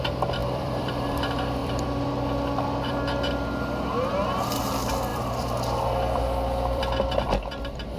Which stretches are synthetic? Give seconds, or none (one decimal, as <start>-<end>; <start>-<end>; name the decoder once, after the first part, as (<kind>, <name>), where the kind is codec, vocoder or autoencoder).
0.4-1.2 (vocoder, BigVGAN v2); 1.6-2.1; 5.1-6.8